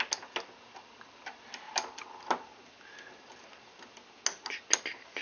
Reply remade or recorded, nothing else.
recorded